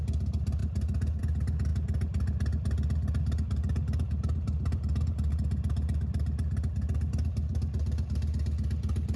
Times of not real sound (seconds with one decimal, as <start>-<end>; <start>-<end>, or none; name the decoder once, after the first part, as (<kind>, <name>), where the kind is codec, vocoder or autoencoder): none